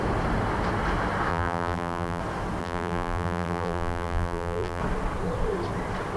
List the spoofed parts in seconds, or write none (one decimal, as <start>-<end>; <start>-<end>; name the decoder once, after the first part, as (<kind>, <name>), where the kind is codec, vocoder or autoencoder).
1.3-2.2 (vocoder, BigVGAN v2); 2.6-4.8